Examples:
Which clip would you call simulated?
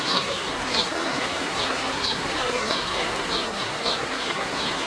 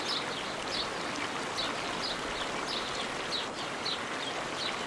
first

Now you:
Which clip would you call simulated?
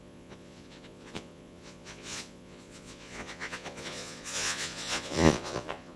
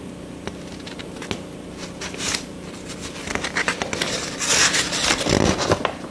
first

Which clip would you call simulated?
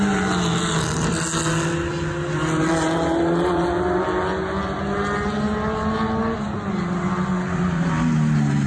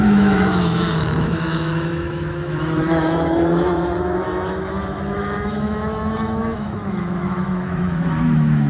second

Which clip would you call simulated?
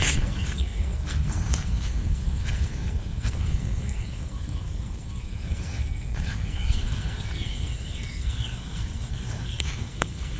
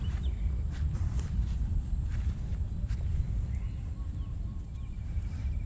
first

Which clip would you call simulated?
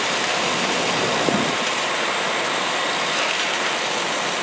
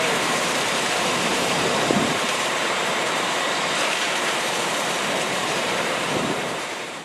second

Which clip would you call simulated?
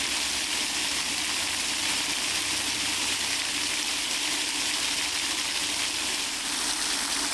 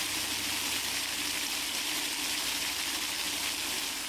first